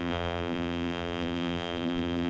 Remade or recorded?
remade